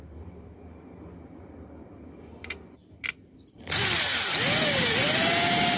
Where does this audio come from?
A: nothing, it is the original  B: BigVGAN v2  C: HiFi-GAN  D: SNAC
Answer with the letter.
A